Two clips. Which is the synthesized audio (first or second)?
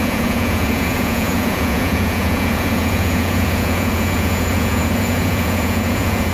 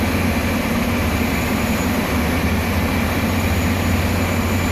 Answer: first